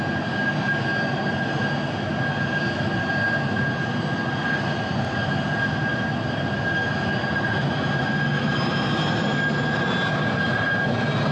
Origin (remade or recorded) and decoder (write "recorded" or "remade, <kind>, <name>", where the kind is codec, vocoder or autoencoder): recorded